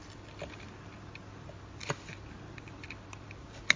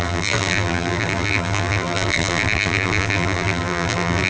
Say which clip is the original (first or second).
first